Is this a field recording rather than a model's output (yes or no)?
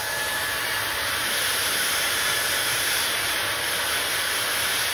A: no